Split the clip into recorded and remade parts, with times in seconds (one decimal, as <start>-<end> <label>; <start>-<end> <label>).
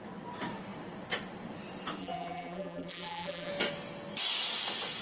0.0-2.0 recorded; 2.0-3.5 remade; 3.5-5.0 recorded